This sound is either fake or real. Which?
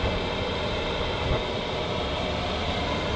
real